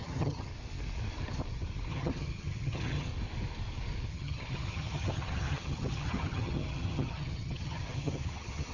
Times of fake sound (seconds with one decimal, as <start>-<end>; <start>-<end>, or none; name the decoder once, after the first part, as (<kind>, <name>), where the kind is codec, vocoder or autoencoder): 0.0-0.5 (vocoder, HiFi-GAN); 1.9-3.1; 4.1-8.7